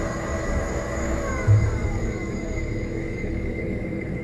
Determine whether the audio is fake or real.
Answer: fake